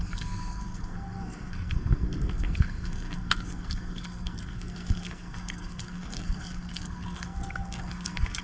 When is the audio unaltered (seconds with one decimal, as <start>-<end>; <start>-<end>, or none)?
none